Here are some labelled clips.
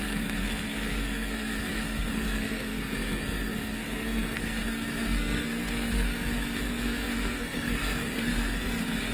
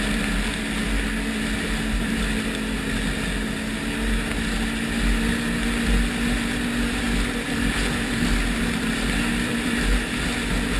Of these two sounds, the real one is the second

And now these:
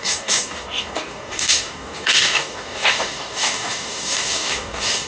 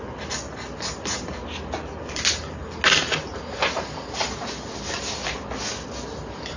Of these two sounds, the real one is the second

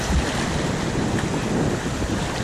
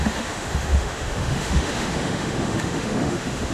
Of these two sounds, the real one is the first